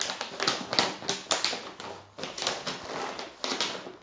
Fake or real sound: real